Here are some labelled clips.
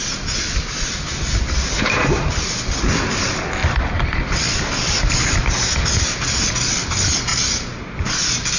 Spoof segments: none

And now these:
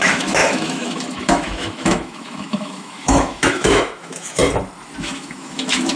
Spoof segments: 0.0-4.4; 5.0-6.0

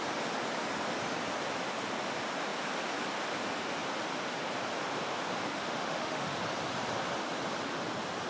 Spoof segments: 5.5-6.4

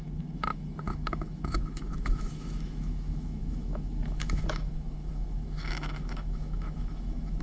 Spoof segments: 0.0-7.4